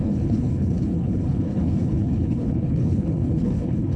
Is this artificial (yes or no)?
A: yes